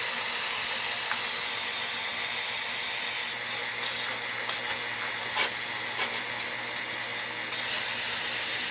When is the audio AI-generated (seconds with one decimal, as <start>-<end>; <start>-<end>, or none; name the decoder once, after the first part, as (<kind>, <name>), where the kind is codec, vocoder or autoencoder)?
none